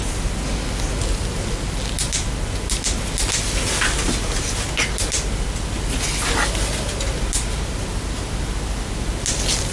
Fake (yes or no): no